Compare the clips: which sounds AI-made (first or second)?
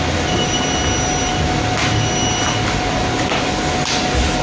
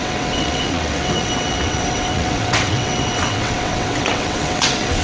second